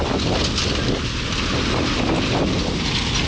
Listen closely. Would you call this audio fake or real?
real